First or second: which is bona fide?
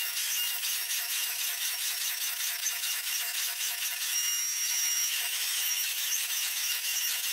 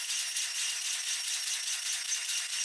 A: second